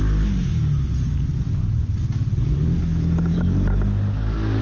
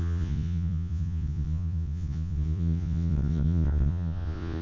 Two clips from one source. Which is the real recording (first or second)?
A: first